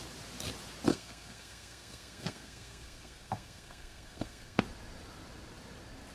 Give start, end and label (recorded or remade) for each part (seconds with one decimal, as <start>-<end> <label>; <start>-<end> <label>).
0.0-0.9 recorded; 0.9-4.6 remade; 4.6-6.1 recorded